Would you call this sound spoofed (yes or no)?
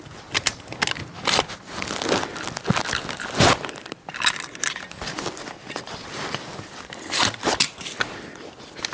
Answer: no